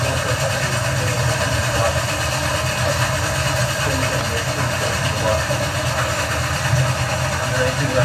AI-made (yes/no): no